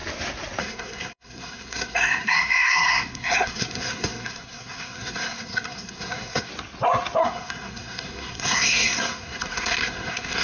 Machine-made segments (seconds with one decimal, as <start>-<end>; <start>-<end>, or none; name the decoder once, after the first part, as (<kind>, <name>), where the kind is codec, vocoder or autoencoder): 0.6-6.5 (codec, SNAC); 7.2-10.4